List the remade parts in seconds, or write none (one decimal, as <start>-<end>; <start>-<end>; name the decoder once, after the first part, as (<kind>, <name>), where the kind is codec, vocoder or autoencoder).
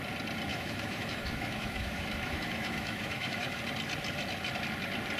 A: 0.5-3.6 (autoencoder, DAC-VAE)